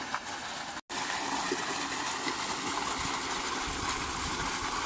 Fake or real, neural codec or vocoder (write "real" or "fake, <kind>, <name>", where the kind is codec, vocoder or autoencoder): real